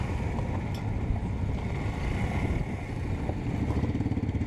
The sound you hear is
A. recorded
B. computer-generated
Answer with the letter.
A